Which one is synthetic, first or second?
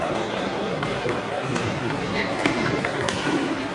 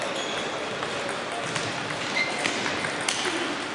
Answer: first